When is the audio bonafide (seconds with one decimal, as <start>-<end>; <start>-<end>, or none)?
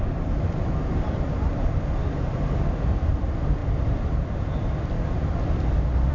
0.0-6.1